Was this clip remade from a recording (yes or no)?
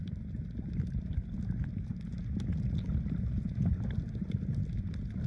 no